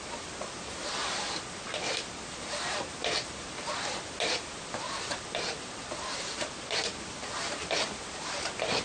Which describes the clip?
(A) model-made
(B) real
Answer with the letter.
A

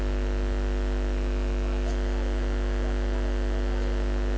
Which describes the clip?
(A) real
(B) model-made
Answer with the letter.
A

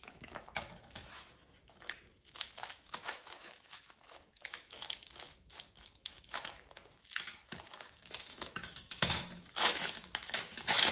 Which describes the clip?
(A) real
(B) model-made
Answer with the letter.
B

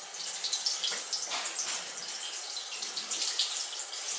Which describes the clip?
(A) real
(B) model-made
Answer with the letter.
A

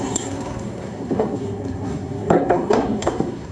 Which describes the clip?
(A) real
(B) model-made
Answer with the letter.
B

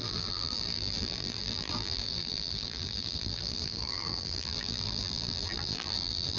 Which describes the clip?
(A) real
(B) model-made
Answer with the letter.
B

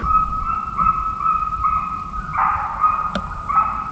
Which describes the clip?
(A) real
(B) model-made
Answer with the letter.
A